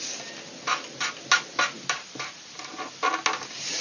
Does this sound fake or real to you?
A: real